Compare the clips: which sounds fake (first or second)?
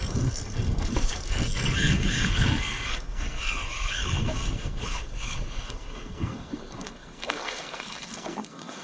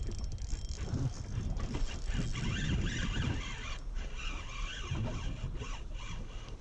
first